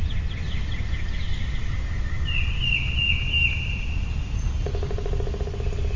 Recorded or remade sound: recorded